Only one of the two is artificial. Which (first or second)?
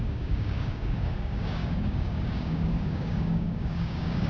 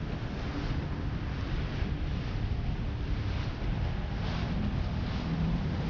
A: first